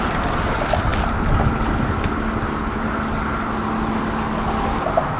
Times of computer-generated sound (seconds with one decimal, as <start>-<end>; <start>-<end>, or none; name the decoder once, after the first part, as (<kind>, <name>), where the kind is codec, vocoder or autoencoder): none